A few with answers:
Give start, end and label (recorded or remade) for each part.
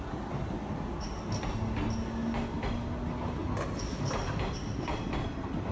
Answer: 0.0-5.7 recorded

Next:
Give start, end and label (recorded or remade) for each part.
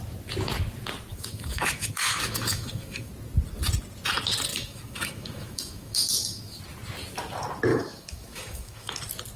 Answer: 0.0-1.1 recorded; 1.1-3.1 remade; 3.1-4.5 recorded; 4.5-6.6 remade; 6.6-7.7 recorded; 7.7-9.0 remade; 9.0-9.4 recorded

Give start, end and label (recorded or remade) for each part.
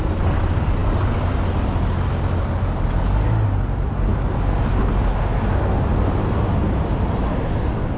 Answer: 0.0-8.0 recorded